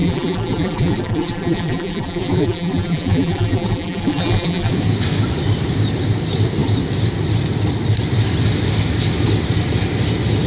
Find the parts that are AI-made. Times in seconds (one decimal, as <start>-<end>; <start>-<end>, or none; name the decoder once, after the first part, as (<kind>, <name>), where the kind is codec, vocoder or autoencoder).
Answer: 0.0-4.7 (vocoder, BigVGAN v2)